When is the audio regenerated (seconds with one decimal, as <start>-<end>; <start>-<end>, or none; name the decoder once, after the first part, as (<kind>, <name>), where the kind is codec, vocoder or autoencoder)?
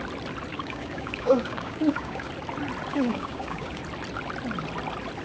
0.5-2.3 (codec, DAC); 2.9-3.8